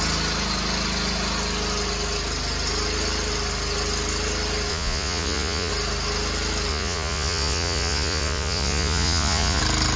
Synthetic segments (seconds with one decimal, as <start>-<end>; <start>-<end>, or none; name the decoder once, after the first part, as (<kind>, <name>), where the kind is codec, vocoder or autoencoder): 4.7-5.7 (vocoder, Vocos); 6.7-9.6